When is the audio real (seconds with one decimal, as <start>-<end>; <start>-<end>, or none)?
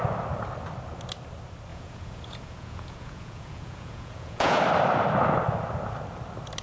0.0-1.7; 4.6-6.6